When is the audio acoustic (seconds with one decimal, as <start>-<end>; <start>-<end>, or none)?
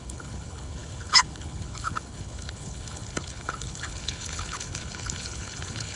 none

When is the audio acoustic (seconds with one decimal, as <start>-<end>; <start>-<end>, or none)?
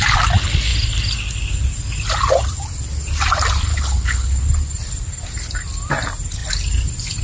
0.0-3.7; 4.4-7.2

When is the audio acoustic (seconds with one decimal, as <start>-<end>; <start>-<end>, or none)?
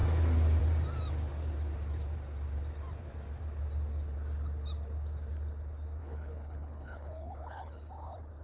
0.0-6.0; 7.9-8.4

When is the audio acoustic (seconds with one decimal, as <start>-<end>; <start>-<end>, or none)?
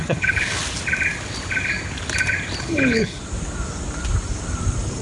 0.6-2.6; 3.2-5.0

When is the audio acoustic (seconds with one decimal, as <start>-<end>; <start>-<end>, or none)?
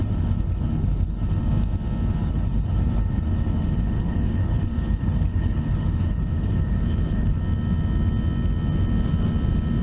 1.5-2.2; 7.4-9.8